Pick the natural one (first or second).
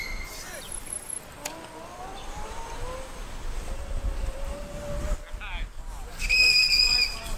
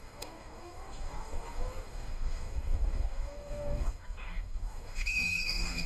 first